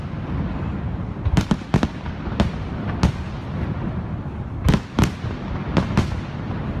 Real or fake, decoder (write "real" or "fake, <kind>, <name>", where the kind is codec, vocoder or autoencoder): real